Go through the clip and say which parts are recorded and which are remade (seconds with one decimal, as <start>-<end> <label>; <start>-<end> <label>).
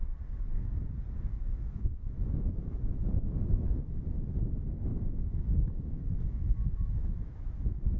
0.0-1.3 recorded; 1.3-3.1 remade; 3.1-4.9 recorded; 4.9-8.0 remade